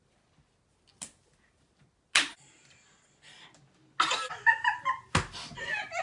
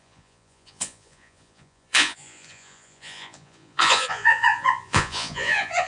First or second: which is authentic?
first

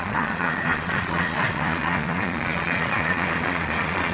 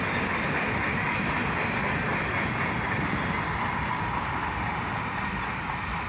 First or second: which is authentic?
second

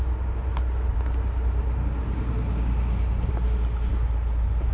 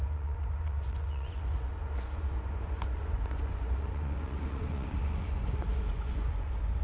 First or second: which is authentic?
first